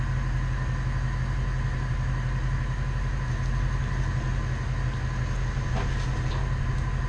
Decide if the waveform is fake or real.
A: real